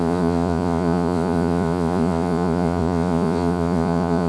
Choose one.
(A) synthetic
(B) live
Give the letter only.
A